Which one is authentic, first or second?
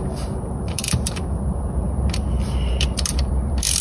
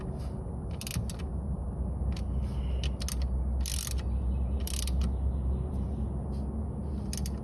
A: second